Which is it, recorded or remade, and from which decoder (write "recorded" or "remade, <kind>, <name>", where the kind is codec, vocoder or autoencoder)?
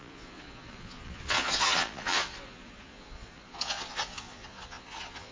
remade, vocoder, Vocos